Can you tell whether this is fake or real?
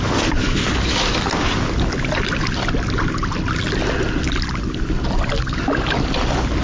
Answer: real